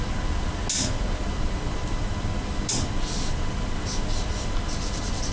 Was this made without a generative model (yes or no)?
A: yes